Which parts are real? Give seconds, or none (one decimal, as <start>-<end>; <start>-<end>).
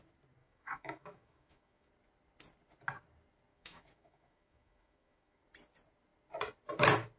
0.0-0.4; 1.9-3.5; 5.4-7.2